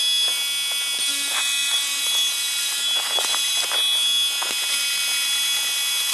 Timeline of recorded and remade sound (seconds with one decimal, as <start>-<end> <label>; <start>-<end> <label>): 0.0-6.1 recorded